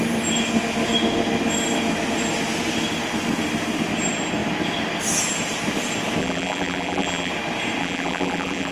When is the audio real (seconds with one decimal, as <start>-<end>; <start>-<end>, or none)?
0.0-6.2; 7.3-7.8